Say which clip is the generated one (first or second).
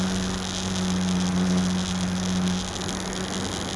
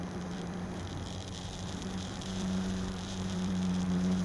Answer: second